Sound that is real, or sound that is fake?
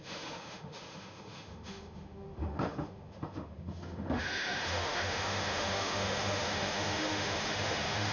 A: fake